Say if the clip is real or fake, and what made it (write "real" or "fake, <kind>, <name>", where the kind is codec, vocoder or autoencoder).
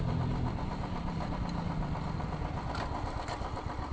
fake, vocoder, BigVGAN v2